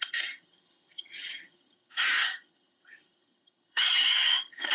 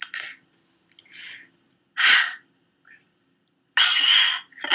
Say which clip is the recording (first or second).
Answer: second